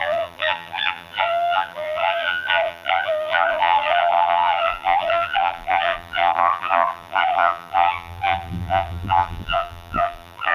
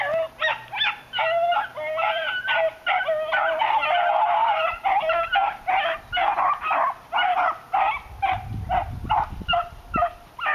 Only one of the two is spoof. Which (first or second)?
first